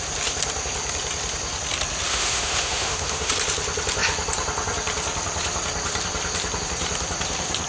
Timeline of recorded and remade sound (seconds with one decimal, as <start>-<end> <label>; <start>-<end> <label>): 0.0-2.1 recorded; 2.1-3.3 remade; 3.3-7.7 recorded